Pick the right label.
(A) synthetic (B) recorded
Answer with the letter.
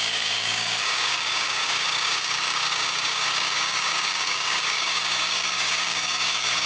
A